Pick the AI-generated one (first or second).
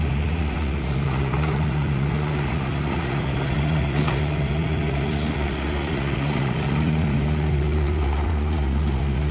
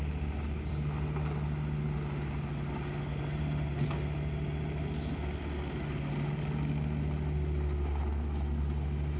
first